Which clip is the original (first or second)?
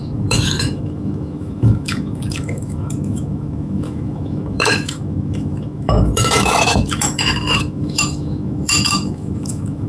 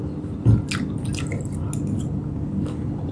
second